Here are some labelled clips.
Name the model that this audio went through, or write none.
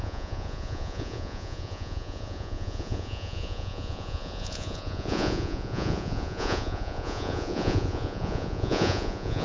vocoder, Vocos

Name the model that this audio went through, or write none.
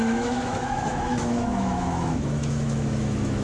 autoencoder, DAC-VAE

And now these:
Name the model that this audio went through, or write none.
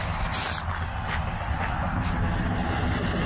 none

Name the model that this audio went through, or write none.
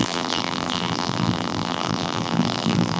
vocoder, BigVGAN v2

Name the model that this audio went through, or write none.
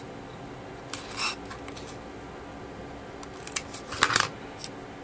none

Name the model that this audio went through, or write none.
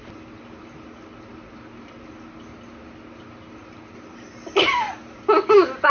none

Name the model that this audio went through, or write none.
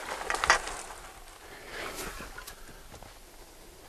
none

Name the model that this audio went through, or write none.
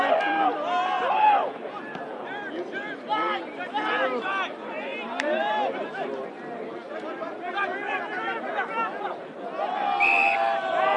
none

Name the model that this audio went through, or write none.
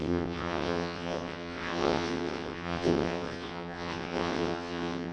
vocoder, WaveNeXt